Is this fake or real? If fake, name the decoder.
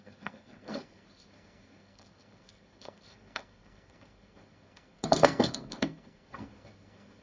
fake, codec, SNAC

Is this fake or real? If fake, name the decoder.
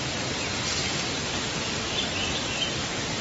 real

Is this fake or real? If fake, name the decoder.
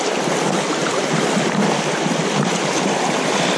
fake, vocoder, BigVGAN v2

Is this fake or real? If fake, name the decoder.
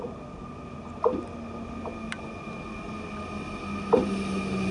real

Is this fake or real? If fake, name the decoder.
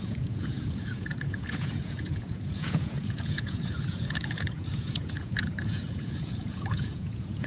fake, vocoder, Vocos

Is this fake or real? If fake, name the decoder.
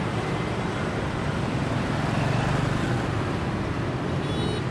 real